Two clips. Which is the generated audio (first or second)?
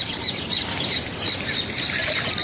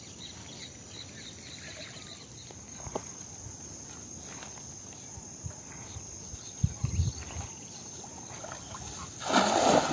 first